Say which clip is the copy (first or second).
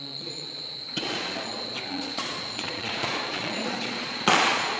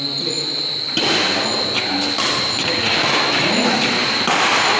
first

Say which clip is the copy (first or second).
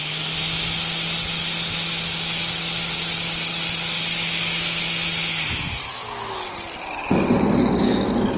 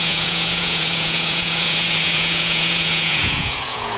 second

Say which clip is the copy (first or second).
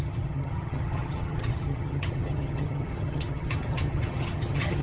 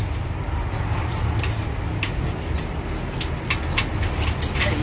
first